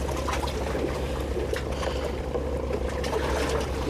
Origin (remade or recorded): recorded